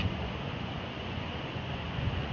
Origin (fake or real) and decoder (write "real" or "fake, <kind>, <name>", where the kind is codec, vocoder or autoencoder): fake, vocoder, Vocos